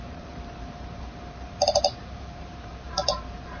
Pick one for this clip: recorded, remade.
remade